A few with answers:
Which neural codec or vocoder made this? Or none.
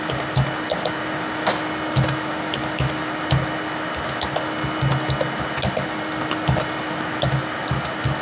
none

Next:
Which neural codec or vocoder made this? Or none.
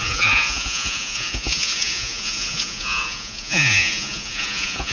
vocoder, Vocos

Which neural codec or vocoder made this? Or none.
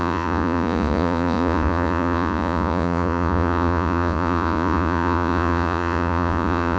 vocoder, Vocos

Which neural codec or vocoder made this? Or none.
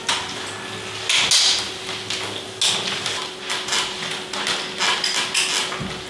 none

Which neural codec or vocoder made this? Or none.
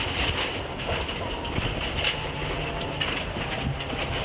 none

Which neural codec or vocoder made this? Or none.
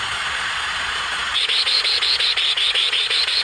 vocoder, Vocos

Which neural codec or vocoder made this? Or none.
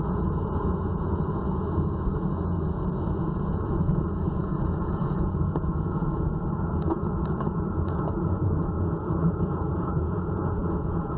vocoder, Vocos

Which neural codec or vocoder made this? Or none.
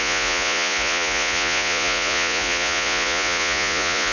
vocoder, Vocos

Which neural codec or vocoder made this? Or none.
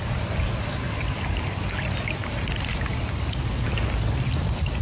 none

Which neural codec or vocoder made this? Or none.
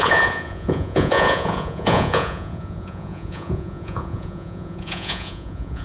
vocoder, Vocos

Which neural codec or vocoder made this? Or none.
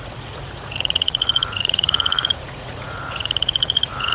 vocoder, Vocos